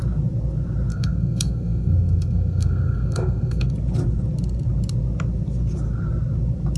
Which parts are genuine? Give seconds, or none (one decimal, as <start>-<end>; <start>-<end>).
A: 0.0-0.9; 3.7-6.8